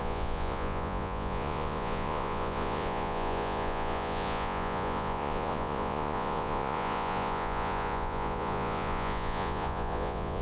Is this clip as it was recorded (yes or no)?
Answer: no